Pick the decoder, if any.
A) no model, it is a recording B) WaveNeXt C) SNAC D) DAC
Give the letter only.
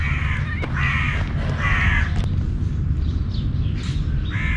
A